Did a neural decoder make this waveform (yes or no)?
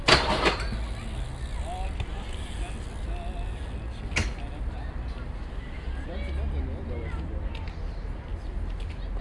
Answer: no